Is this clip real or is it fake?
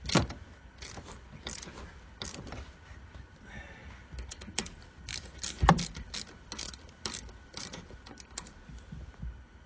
real